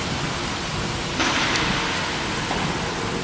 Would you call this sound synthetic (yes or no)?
no